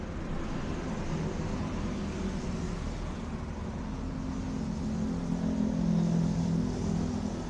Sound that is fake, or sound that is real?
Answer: real